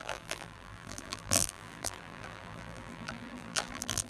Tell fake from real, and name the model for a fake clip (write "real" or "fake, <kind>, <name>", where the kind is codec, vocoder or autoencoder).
fake, vocoder, BigVGAN v2